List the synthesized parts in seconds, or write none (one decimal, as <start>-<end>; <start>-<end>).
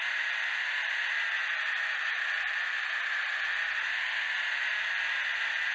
none